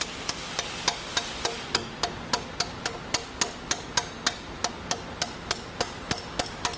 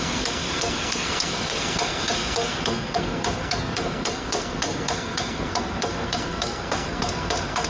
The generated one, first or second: second